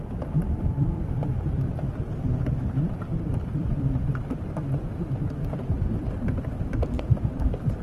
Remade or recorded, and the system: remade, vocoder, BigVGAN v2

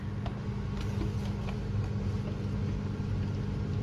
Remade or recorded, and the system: recorded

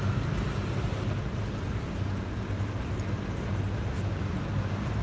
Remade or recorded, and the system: remade, vocoder, BigVGAN v2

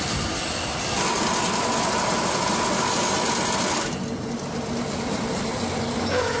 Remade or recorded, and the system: recorded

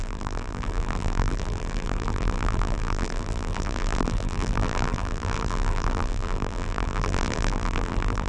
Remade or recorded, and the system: remade, vocoder, BigVGAN v2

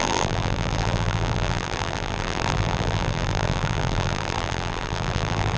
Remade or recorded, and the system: remade, vocoder, BigVGAN v2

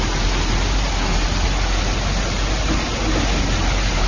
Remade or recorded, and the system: recorded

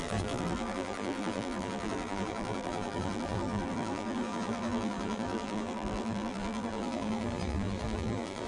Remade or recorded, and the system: remade, vocoder, BigVGAN v2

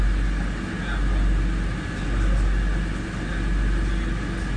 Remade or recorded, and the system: recorded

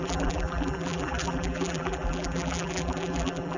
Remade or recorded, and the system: remade, vocoder, BigVGAN v2